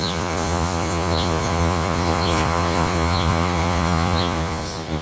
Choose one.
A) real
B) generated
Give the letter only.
B